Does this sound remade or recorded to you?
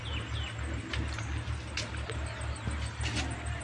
recorded